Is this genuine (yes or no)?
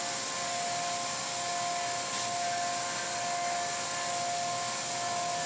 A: yes